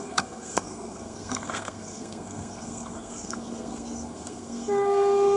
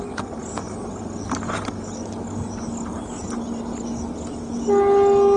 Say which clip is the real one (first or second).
second